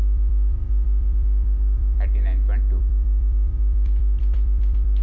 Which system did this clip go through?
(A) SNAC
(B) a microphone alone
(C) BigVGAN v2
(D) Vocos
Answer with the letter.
C